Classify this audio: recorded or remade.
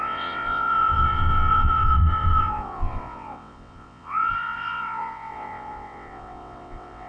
remade